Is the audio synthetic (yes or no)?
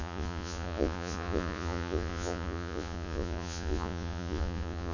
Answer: yes